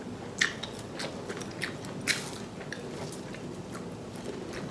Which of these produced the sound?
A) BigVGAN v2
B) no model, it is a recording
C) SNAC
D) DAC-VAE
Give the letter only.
B